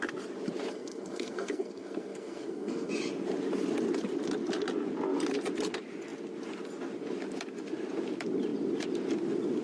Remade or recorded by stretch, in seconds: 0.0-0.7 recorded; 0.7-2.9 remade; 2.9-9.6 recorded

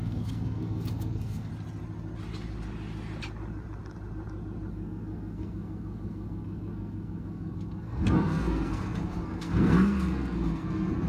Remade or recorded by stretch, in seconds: 0.0-1.5 remade; 1.5-4.7 recorded; 4.7-11.1 remade